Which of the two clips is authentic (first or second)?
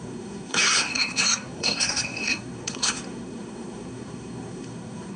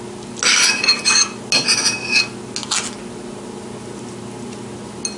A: second